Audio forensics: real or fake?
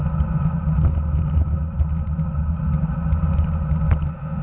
real